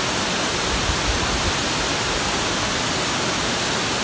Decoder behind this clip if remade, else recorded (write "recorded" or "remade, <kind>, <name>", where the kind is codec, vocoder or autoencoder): recorded